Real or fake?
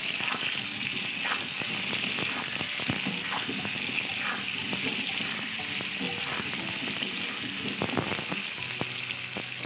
real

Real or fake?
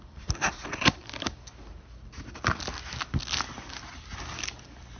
real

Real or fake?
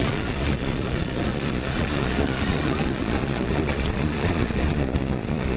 fake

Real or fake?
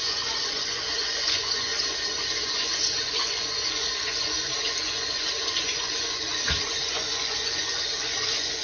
fake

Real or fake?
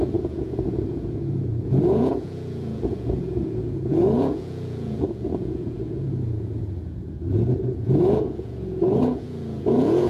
fake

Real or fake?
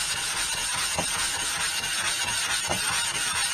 fake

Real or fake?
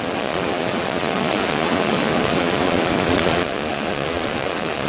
fake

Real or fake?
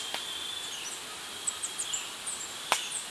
real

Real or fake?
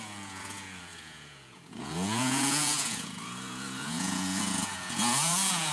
fake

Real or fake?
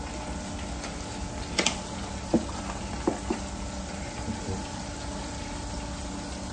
real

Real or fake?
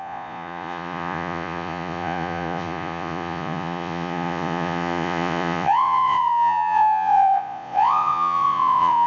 fake